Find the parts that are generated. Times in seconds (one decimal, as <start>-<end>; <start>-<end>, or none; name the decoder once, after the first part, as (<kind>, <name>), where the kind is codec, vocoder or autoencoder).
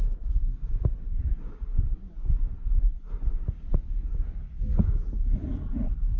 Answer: none